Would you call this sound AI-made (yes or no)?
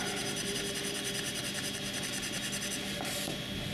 no